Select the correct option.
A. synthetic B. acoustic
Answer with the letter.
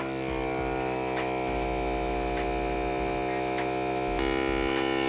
B